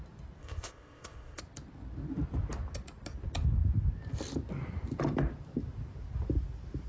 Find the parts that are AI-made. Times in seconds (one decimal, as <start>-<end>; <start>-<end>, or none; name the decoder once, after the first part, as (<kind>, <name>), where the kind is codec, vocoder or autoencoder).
0.4-1.4 (codec, ZipCodec)